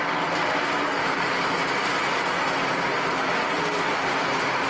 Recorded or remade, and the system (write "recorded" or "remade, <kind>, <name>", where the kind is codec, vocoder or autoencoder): recorded